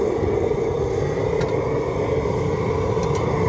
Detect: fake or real real